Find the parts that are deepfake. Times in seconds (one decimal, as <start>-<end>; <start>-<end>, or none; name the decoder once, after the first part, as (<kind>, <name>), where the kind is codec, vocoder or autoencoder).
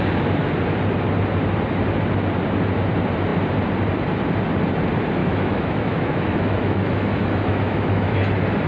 5.2-8.1 (autoencoder, DAC-VAE)